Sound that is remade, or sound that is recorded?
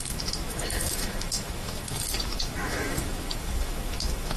remade